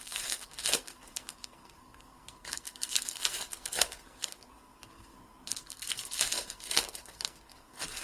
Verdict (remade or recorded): remade